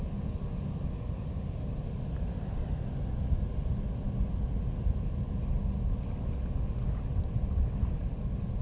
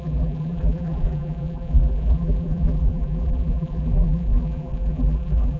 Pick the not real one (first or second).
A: second